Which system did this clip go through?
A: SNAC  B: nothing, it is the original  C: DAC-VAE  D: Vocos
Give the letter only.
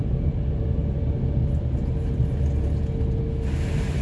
B